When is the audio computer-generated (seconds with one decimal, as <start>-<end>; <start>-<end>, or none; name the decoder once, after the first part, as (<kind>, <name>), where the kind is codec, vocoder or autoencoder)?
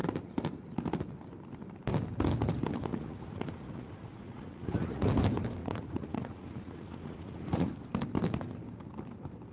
2.8-5.1 (vocoder, Vocos); 5.6-7.7